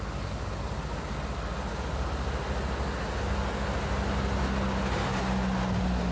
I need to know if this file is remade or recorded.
recorded